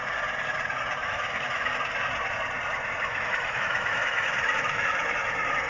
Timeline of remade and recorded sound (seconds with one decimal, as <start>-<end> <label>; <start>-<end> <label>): 0.0-1.0 recorded; 1.0-1.7 remade; 1.7-3.1 recorded; 3.1-5.7 remade